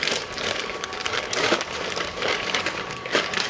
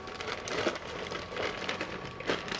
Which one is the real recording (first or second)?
second